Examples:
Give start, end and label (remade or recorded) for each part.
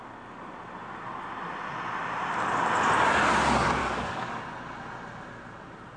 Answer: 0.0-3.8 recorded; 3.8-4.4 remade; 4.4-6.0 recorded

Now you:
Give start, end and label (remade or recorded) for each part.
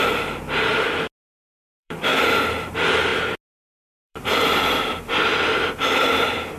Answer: 0.0-0.7 remade; 0.7-1.2 recorded; 1.2-2.1 remade; 2.1-2.7 recorded; 2.7-3.1 remade; 3.1-3.8 recorded; 3.8-6.6 remade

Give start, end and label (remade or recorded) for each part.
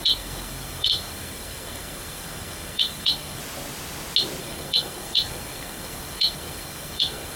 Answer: 0.0-3.4 remade; 3.4-4.4 recorded; 4.4-7.4 remade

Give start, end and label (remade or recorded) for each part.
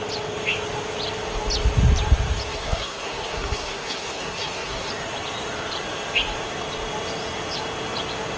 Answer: 0.0-2.5 recorded; 2.5-4.9 remade; 4.9-8.4 recorded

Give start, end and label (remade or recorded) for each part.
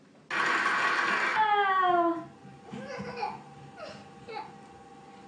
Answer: 0.0-5.3 recorded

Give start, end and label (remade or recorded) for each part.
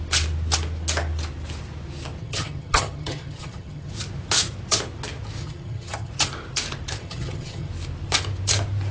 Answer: 0.0-2.2 recorded; 2.2-3.9 remade; 3.9-5.4 recorded; 5.4-6.1 remade; 6.1-7.0 recorded; 7.0-7.7 remade; 7.7-8.9 recorded